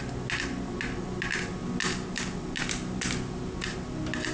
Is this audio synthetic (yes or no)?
no